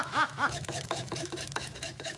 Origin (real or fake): fake